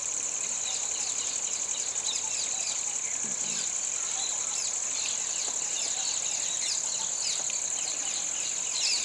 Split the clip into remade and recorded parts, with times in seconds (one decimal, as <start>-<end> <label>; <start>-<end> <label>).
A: 0.0-0.6 remade; 0.6-4.3 recorded; 4.3-4.9 remade; 4.9-9.0 recorded